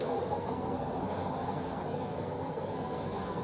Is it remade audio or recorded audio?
remade